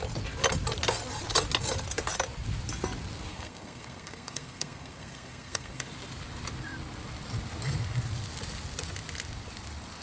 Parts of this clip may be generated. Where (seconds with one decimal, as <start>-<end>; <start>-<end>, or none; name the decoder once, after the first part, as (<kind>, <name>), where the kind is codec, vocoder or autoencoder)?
3.3-5.9 (codec, SNAC)